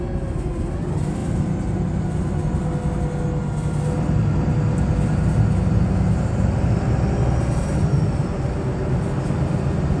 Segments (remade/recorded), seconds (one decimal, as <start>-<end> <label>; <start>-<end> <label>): 0.0-10.0 recorded

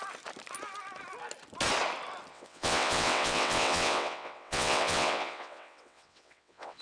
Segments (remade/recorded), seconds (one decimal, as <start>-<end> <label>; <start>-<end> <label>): 0.0-2.3 recorded; 2.3-6.8 remade